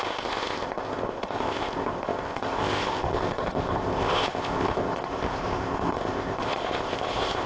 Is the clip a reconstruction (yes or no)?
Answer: yes